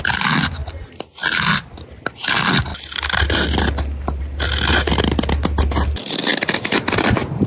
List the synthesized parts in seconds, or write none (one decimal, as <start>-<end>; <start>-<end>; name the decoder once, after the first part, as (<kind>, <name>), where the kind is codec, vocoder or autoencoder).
none